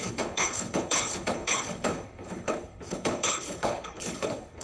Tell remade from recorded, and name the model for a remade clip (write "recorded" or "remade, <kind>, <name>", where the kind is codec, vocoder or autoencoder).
remade, codec, HILCodec